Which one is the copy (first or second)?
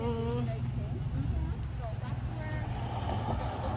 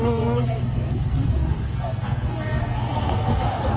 second